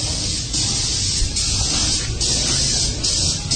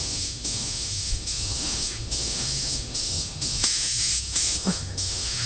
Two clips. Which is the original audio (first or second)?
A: first